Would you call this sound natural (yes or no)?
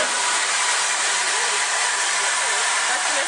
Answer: no